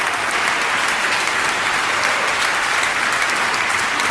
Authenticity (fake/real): real